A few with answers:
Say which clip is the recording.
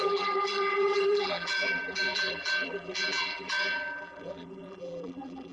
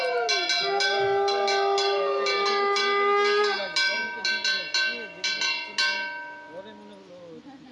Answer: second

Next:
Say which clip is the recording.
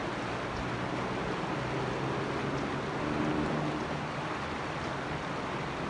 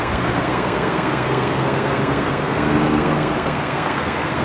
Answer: first